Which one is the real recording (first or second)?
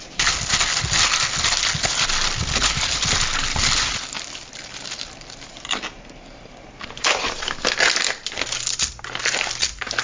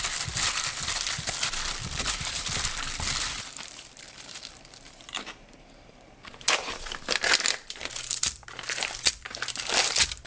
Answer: first